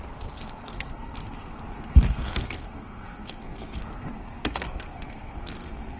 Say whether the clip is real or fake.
fake